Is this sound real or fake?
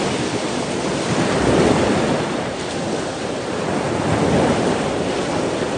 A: fake